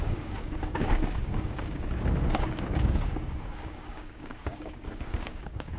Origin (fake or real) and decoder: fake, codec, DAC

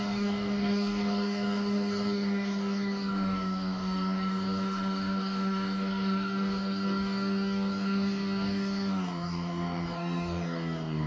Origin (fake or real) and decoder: fake, codec, DAC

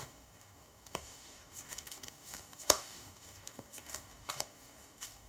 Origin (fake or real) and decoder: fake, codec, DAC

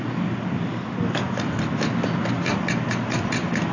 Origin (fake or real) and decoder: real